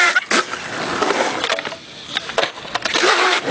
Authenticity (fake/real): real